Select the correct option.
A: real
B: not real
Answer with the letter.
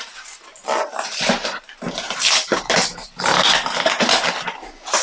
A